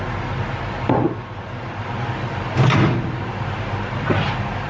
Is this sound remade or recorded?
recorded